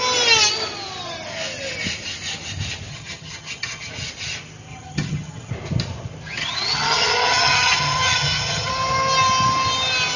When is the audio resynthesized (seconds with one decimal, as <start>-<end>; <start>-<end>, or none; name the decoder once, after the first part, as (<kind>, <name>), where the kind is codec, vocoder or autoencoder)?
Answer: 2.9-3.9 (vocoder, HiFi-GAN); 4.7-5.5; 6.4-8.7